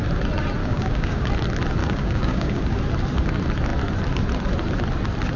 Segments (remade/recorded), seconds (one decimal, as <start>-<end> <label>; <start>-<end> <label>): 0.0-0.6 recorded; 0.6-1.3 remade; 1.3-1.8 recorded; 1.8-2.8 remade; 2.8-5.4 recorded